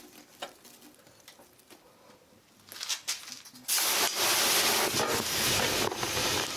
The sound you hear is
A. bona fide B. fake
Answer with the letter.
A